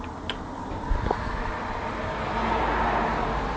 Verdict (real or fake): real